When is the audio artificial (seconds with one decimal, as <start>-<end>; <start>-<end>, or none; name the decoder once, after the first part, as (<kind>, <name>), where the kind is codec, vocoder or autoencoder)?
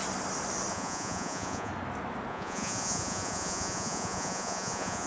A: 0.7-1.7 (vocoder, Vocos); 2.3-5.1